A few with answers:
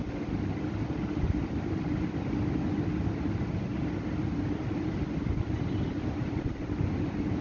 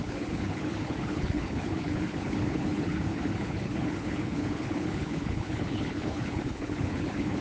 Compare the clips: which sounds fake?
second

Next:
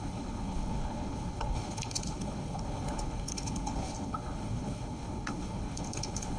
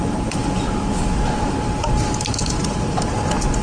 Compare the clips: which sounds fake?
first